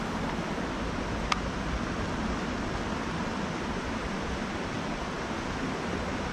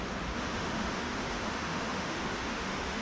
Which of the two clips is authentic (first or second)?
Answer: first